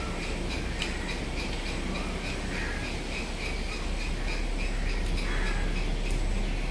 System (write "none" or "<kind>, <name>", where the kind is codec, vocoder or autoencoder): none